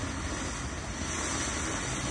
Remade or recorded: recorded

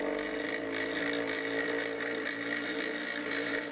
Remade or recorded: recorded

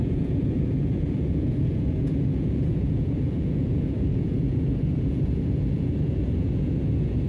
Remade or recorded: remade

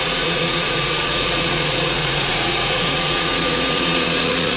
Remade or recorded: remade